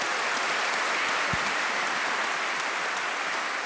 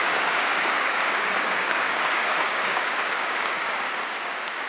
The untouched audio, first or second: first